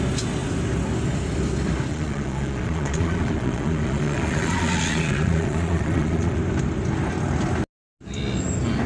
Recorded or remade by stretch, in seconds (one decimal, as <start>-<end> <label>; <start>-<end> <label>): 0.0-1.9 recorded; 1.9-6.4 remade; 6.4-8.9 recorded